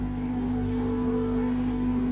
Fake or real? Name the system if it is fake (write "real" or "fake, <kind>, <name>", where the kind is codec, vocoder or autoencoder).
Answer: fake, codec, DAC